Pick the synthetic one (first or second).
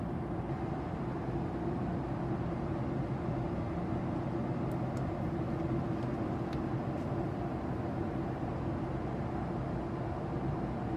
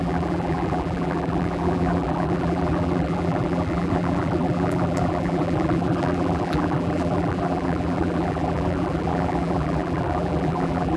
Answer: second